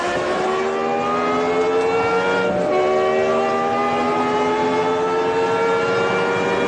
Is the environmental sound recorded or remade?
recorded